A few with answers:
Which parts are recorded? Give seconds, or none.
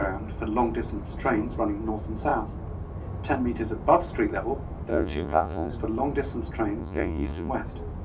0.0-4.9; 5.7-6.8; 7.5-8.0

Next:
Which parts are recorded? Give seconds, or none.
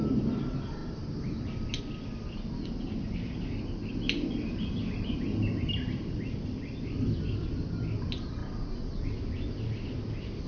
0.0-10.5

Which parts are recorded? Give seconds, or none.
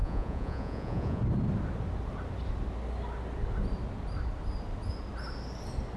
1.2-6.0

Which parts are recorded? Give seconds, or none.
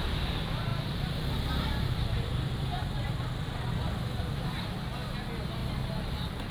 0.0-0.7; 2.8-5.6; 6.1-6.5